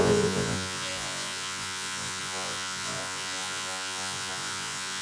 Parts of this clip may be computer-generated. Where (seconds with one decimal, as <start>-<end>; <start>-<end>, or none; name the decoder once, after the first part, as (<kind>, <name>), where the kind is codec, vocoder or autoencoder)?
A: 0.0-5.0 (vocoder, Vocos)